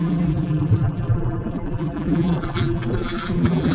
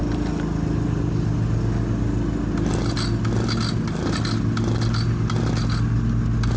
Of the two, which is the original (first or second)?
second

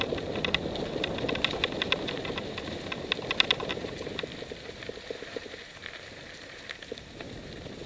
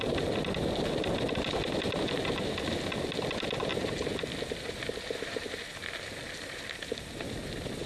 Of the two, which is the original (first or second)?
second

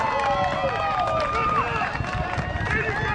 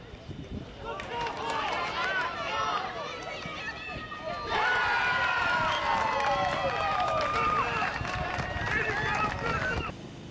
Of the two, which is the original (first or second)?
first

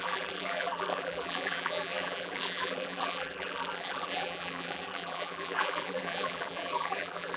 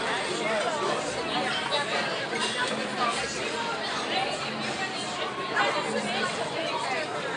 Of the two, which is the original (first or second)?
second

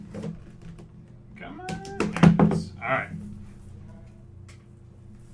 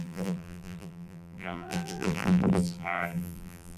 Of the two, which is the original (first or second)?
first